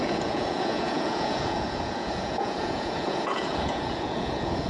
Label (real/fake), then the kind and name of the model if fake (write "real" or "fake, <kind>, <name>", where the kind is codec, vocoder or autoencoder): fake, vocoder, Vocos